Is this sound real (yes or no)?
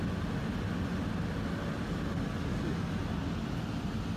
yes